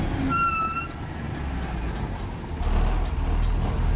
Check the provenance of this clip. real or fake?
real